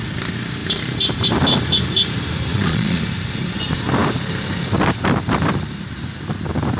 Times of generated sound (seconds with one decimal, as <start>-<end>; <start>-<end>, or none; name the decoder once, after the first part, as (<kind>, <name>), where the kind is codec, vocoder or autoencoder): 2.5-3.0 (vocoder, Vocos)